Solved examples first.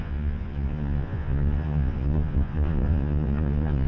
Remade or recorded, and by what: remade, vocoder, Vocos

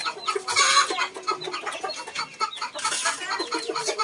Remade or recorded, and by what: recorded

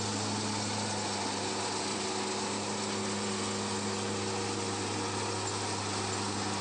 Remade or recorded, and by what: recorded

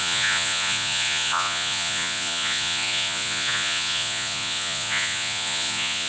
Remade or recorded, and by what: remade, vocoder, Vocos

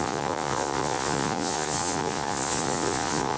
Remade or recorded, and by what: remade, vocoder, Vocos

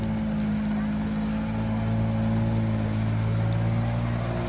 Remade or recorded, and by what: recorded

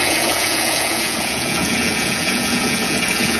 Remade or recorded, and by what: remade, vocoder, Vocos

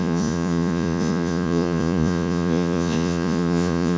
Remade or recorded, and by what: remade, vocoder, Vocos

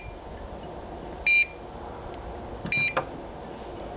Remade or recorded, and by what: recorded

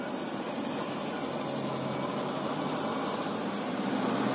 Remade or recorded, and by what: recorded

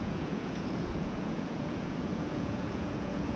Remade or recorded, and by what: remade, vocoder, Vocos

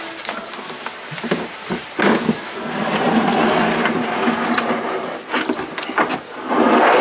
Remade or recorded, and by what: recorded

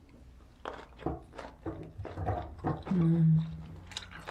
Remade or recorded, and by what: recorded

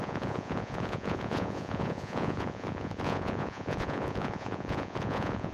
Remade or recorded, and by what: remade, vocoder, Vocos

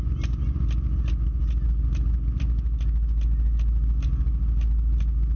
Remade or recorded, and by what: recorded